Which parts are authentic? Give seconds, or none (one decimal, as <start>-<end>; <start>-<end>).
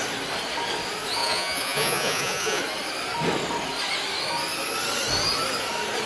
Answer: 0.0-1.2; 2.6-6.1